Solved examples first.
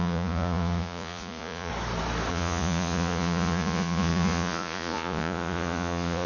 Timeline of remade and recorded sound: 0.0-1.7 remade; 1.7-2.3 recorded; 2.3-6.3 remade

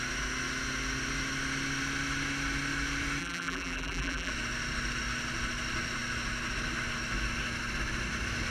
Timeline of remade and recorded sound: 0.0-3.2 recorded; 3.2-4.3 remade; 4.3-8.5 recorded

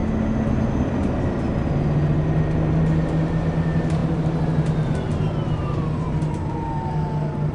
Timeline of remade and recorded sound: 0.0-7.5 recorded